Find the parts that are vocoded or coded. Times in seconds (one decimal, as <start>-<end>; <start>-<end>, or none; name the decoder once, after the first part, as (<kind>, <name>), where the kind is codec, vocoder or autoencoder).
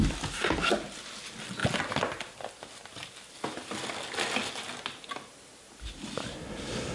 none